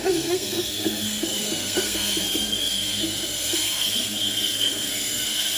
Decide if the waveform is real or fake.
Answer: fake